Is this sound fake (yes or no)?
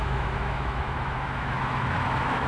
yes